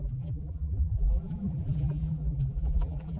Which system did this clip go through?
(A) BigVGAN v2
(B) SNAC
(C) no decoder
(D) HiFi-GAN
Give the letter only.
A